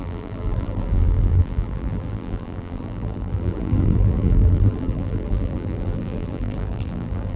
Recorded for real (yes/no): no